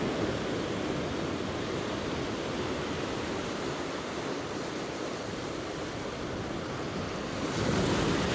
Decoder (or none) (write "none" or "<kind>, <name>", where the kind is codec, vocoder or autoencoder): none